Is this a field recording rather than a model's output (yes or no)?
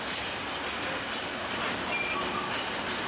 yes